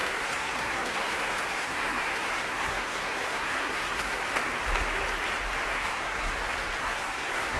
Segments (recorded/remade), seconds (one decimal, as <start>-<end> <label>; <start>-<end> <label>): 0.0-4.2 remade; 4.2-5.7 recorded; 5.7-6.3 remade; 6.3-6.8 recorded; 6.8-7.6 remade